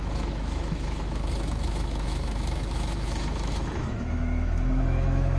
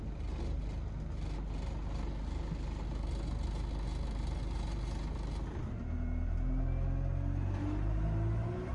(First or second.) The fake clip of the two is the first